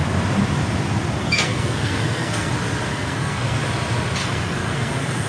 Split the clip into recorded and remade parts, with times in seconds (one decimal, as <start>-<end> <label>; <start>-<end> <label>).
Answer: 0.0-1.2 recorded; 1.2-2.5 remade; 2.5-2.9 recorded; 2.9-3.6 remade; 3.6-4.2 recorded; 4.2-5.3 remade